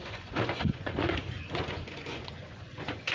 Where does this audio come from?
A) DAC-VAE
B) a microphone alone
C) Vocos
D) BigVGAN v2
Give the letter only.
C